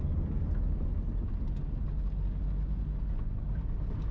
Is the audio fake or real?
real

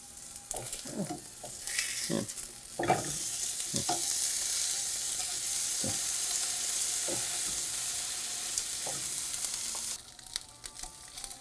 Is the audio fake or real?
real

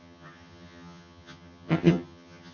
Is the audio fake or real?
fake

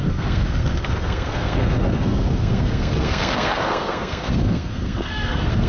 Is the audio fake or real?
fake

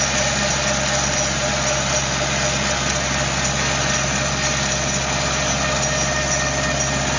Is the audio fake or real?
real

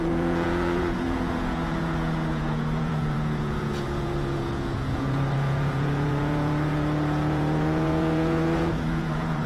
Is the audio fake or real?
fake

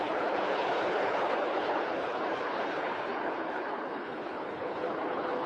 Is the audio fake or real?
fake